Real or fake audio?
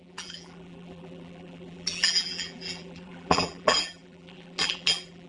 fake